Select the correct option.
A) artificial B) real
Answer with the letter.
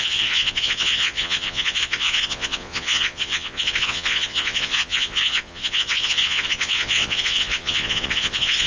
A